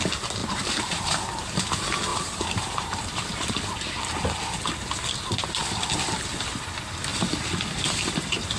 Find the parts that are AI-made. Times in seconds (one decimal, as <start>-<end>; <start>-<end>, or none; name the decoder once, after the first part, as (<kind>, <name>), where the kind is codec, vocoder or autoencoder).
0.4-1.7 (vocoder, BigVGAN v2); 2.1-3.9; 7.1-8.6